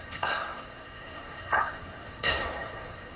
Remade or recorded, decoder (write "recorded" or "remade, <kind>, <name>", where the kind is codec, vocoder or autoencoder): remade, codec, SNAC